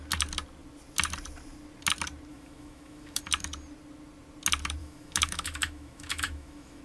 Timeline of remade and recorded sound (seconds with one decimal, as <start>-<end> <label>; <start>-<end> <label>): 0.0-2.3 recorded; 2.3-3.2 remade; 3.2-4.8 recorded; 4.8-6.8 remade